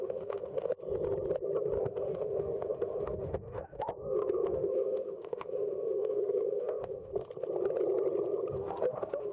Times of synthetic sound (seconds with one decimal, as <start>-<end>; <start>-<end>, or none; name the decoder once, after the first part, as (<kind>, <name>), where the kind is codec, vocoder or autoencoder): 0.0-0.7 (autoencoder, DAC-VAE); 1.8-7.1; 8.5-9.3